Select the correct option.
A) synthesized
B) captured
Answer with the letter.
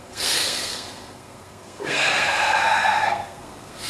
A